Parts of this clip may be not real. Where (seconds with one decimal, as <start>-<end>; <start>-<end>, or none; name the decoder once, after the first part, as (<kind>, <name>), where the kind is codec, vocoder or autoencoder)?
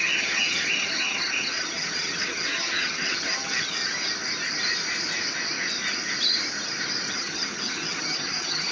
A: 0.0-3.8 (vocoder, HiFi-GAN); 7.1-8.7